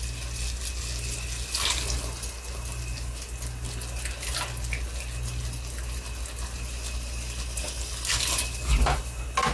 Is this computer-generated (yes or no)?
no